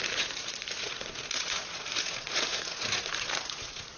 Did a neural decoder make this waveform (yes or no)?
yes